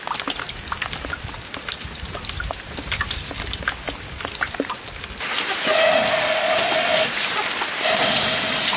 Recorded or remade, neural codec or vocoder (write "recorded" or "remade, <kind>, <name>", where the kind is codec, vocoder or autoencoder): recorded